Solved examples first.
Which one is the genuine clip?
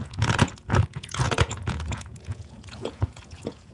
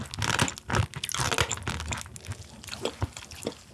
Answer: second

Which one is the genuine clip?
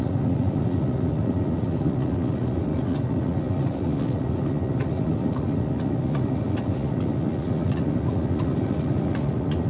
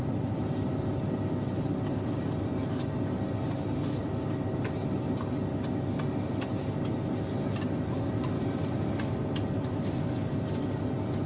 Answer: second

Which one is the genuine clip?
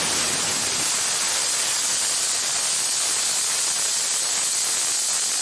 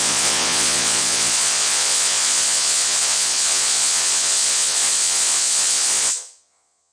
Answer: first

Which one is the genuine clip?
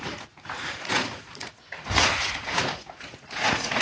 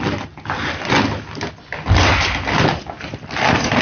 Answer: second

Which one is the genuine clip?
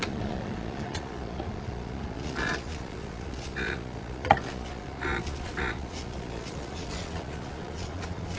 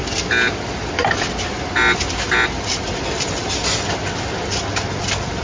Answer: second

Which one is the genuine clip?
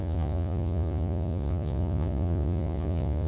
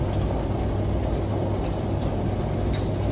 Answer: second